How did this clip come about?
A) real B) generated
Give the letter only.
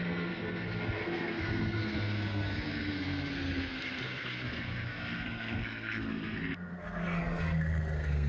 B